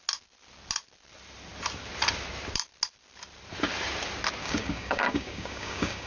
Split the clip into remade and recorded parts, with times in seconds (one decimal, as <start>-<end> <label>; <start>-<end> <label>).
0.0-4.4 recorded; 4.4-6.1 remade